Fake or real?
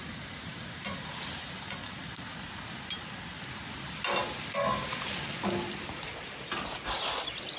real